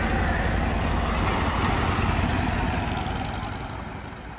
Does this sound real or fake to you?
real